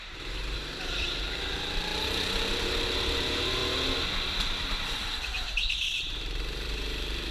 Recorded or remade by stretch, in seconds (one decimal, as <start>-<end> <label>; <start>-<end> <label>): 0.0-3.6 remade; 3.6-5.0 recorded; 5.0-7.3 remade